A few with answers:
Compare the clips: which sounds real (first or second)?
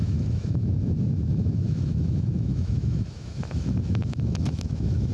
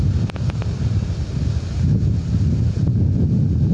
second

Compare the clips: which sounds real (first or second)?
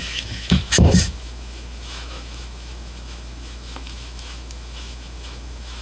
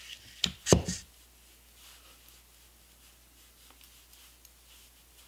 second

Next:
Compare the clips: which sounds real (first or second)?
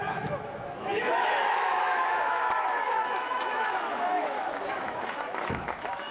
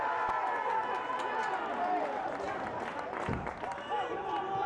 second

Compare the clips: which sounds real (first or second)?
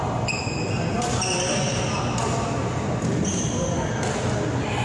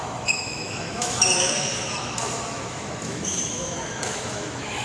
first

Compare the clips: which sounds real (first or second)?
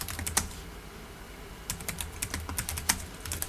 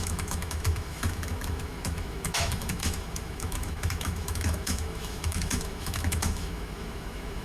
first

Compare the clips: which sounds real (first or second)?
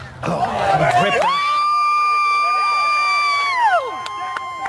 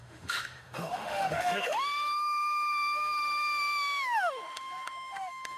first